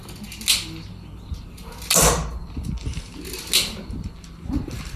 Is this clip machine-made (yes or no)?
no